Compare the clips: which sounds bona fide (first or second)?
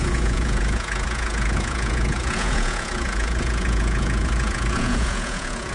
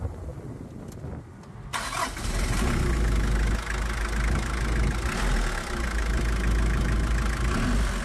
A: second